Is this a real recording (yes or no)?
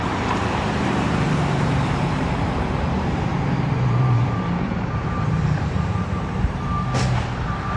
no